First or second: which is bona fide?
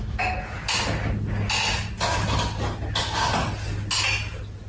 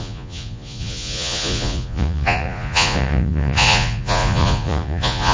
first